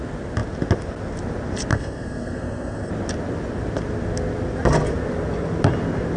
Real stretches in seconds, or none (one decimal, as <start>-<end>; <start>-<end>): 0.0-1.7; 2.9-6.2